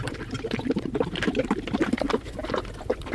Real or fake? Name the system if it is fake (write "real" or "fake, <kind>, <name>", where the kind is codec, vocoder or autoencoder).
real